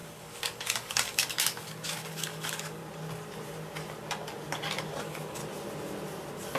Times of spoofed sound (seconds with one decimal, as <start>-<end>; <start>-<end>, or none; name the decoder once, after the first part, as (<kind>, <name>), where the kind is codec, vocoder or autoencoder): 0.0-2.8 (codec, DAC); 5.0-5.4